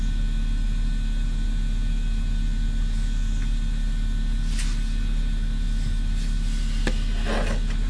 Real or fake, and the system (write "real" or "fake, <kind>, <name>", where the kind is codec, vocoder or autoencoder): real